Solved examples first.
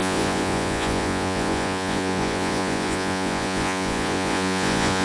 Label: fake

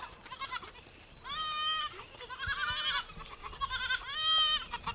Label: real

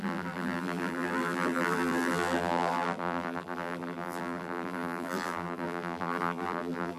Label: fake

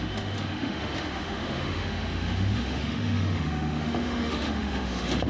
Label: fake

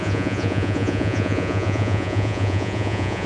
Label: fake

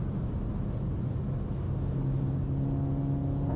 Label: real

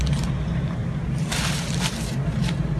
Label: fake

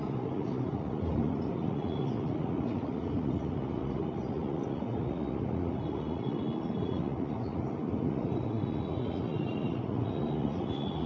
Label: fake